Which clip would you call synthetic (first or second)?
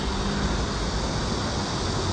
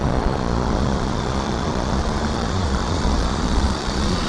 second